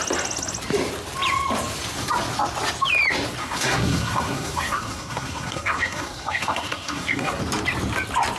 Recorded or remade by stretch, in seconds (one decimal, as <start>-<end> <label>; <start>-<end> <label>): 0.0-3.4 recorded; 3.4-7.4 remade; 7.4-8.4 recorded